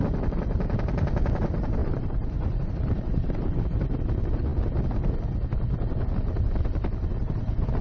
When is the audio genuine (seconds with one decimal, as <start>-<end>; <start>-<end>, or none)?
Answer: 0.0-1.8; 2.7-7.8